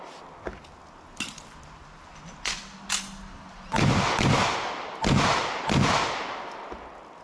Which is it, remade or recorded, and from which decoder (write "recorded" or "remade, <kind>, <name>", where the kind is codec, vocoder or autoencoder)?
recorded